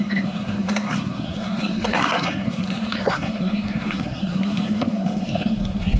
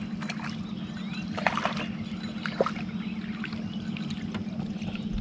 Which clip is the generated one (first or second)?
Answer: first